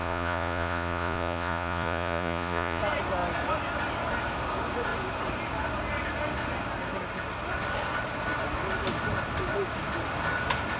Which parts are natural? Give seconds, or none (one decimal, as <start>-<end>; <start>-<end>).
2.8-10.8